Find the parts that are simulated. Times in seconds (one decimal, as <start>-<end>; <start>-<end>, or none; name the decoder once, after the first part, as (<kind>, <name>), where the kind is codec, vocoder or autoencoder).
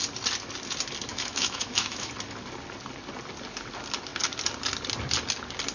1.1-2.1 (autoencoder, DAC-VAE)